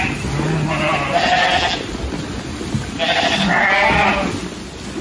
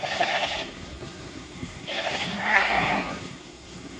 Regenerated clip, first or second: second